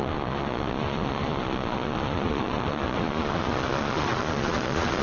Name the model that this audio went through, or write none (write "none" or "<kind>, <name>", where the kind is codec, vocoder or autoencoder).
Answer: vocoder, Vocos